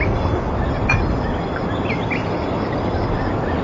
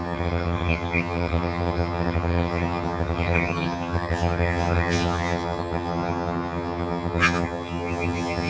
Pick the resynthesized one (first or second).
second